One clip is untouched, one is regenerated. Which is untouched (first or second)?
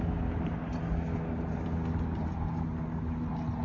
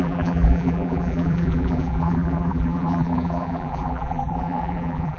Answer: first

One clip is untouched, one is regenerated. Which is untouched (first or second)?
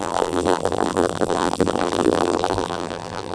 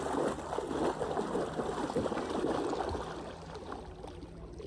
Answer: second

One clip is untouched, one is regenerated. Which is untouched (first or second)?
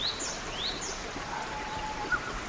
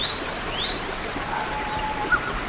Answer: second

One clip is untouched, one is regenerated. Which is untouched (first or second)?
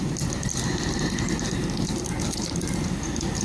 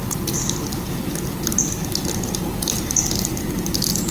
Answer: second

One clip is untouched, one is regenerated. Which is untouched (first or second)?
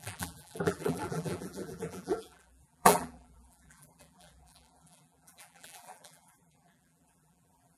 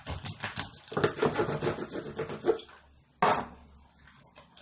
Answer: second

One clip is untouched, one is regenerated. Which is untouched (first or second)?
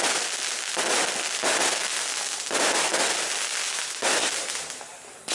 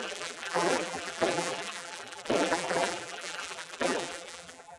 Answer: first